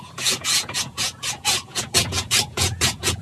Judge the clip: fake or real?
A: fake